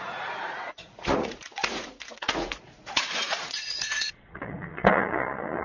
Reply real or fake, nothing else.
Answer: fake